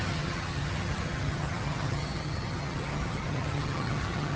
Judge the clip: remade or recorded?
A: remade